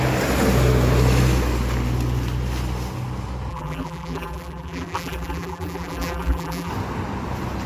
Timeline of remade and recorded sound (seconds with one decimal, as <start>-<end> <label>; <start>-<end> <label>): 0.0-3.5 recorded; 3.5-6.7 remade; 6.7-7.7 recorded